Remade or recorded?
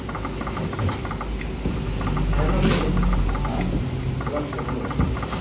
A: recorded